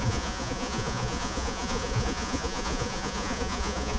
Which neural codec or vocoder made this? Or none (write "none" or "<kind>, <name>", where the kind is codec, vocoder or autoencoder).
vocoder, Vocos